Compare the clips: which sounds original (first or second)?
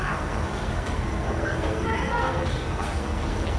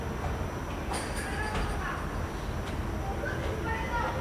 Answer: second